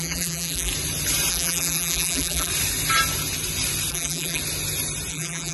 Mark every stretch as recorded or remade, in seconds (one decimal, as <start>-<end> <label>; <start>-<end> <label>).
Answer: 0.0-0.7 remade; 0.7-1.3 recorded; 1.3-2.5 remade; 2.5-3.9 recorded; 3.9-4.4 remade; 4.4-5.1 recorded; 5.1-5.5 remade